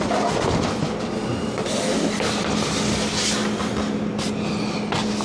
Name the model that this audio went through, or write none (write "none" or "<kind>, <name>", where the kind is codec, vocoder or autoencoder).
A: vocoder, BigVGAN v2